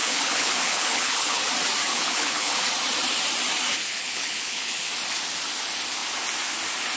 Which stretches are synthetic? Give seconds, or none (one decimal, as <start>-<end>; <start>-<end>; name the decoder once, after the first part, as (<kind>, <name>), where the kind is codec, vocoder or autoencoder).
0.0-1.4 (codec, HILCodec); 1.9-2.6; 3.8-4.9